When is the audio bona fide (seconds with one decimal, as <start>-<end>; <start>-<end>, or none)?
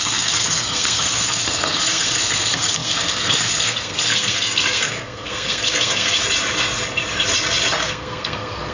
6.2-7.8